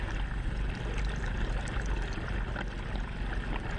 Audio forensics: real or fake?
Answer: real